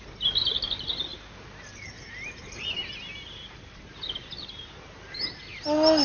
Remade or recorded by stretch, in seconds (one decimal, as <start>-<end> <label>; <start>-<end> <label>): 0.0-6.0 recorded